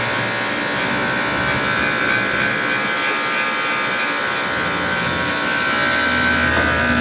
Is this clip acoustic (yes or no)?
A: yes